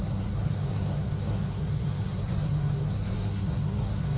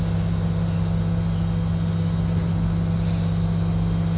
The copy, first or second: first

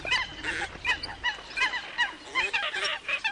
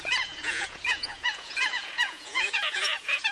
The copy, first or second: second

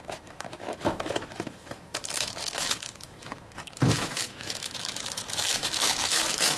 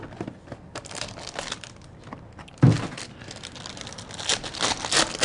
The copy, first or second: first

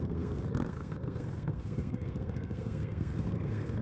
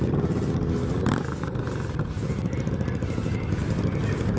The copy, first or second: first